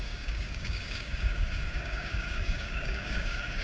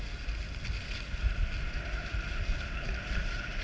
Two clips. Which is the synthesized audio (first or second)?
first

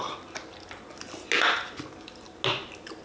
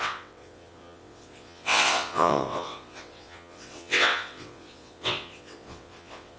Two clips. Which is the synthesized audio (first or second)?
second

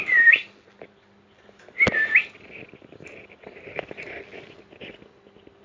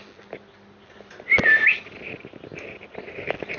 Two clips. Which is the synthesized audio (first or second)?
first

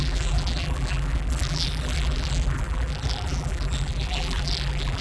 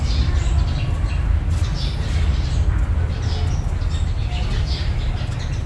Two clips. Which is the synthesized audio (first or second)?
first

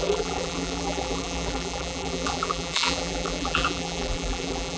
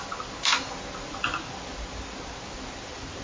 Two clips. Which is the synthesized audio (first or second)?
first